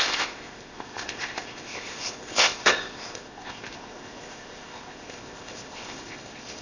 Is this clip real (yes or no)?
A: no